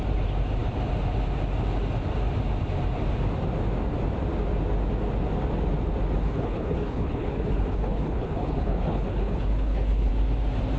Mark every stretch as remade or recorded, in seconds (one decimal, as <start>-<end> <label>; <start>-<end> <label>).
0.0-6.2 recorded; 6.2-10.1 remade; 10.1-10.8 recorded